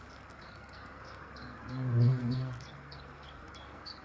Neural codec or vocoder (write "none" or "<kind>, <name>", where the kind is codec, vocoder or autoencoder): codec, SNAC